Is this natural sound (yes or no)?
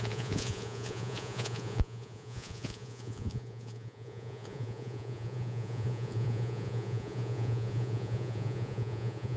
no